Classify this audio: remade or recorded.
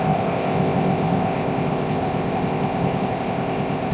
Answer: remade